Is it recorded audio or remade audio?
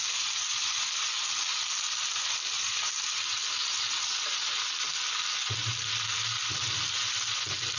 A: recorded